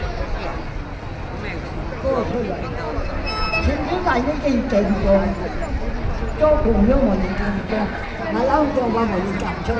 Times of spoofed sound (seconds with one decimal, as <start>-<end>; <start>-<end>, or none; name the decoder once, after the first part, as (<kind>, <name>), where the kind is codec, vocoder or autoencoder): 7.3-8.2 (codec, SNAC)